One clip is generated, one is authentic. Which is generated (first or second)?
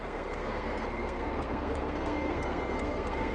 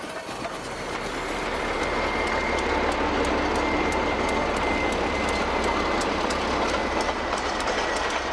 first